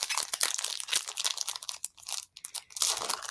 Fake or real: real